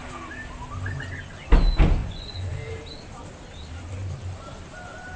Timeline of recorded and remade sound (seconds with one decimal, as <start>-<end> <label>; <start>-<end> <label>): 0.0-2.0 recorded; 2.0-2.5 remade; 2.5-5.2 recorded